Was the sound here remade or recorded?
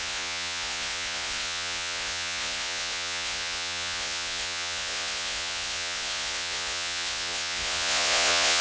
remade